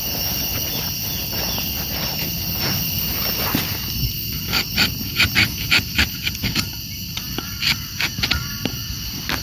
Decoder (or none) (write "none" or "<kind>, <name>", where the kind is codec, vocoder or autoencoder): none